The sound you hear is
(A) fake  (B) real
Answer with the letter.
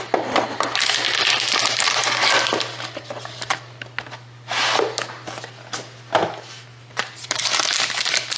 B